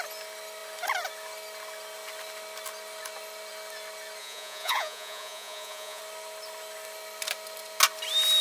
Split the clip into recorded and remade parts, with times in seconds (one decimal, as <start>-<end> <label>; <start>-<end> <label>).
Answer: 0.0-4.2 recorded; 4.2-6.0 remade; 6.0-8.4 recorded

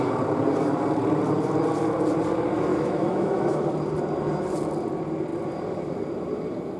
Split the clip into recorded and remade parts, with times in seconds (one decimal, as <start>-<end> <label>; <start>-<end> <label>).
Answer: 0.0-2.7 recorded; 2.7-3.7 remade; 3.7-6.8 recorded

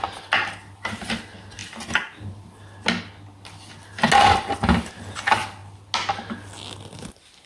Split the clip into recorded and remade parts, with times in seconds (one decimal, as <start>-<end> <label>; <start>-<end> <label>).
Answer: 0.0-7.5 recorded